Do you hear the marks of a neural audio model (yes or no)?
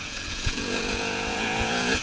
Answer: yes